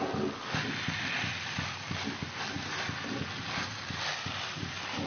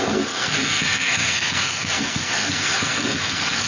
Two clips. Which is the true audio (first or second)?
first